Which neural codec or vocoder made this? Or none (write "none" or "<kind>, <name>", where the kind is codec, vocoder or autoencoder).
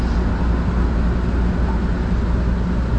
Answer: none